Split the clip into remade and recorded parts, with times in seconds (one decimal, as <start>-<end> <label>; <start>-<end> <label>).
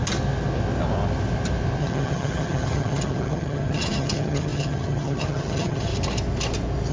0.0-1.8 recorded; 1.8-5.9 remade; 5.9-6.9 recorded